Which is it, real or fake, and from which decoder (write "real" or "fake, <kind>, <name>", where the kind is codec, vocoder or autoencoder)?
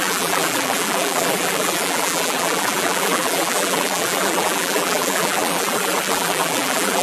fake, vocoder, BigVGAN v2